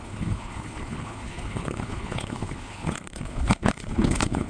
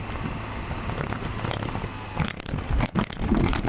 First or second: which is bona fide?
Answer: second